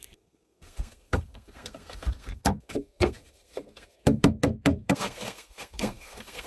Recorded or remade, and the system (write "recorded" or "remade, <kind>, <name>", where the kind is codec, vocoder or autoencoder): remade, codec, SNAC